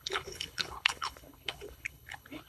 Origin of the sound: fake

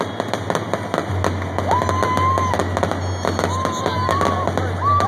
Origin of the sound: real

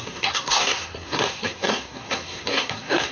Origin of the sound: fake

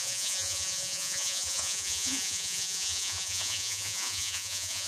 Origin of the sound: fake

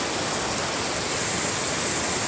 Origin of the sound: real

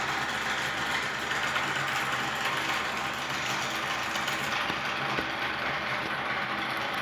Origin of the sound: real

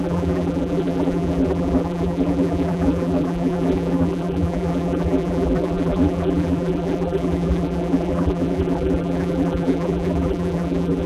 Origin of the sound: fake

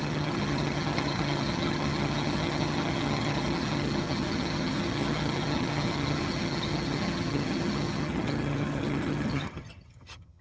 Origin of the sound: fake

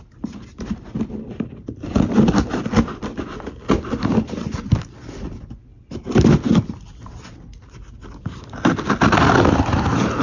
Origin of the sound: real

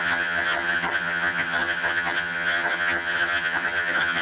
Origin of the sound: fake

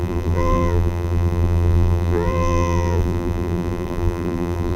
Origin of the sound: fake